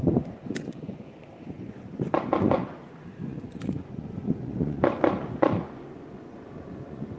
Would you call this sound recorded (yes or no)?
no